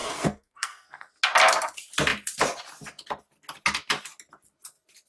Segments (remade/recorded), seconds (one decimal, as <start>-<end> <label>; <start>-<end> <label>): 0.0-1.1 remade; 1.1-5.1 recorded